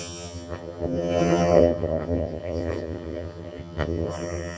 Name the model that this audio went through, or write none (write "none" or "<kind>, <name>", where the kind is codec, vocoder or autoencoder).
vocoder, HiFi-GAN